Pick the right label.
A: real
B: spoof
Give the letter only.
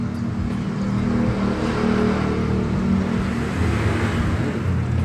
A